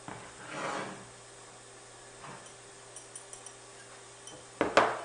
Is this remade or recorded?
recorded